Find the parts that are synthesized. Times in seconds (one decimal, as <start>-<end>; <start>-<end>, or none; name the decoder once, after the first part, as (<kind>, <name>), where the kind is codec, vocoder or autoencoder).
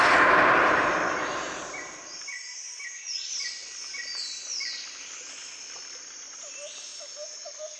0.0-3.6 (vocoder, BigVGAN v2); 4.6-6.9